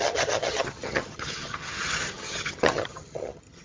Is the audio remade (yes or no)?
yes